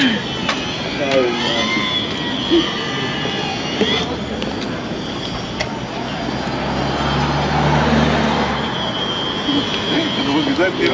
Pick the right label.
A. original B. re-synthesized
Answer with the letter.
A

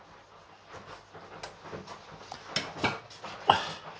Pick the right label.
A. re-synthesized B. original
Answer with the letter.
B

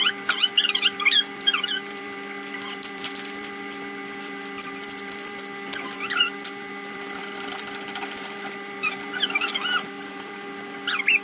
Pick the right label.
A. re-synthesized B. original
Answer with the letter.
A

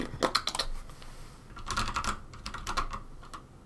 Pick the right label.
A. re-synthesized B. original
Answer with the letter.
B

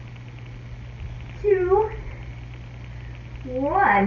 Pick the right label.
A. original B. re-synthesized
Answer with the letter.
A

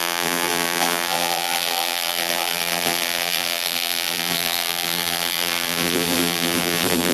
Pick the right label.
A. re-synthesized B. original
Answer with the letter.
A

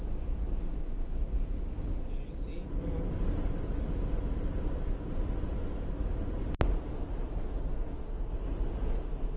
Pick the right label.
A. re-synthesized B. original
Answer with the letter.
B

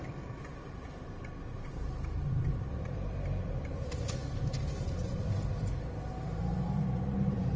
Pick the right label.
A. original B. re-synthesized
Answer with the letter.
B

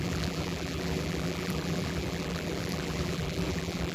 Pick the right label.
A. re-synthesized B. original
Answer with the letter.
A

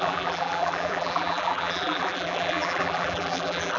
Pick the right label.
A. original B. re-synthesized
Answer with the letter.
B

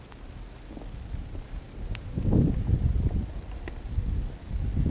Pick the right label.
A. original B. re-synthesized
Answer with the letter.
A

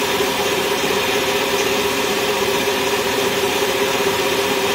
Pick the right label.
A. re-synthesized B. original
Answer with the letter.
A